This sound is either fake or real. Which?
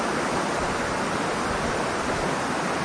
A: real